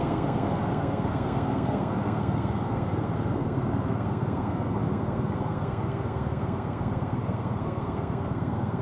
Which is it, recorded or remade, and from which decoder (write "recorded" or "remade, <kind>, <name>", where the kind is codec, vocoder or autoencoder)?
remade, codec, SNAC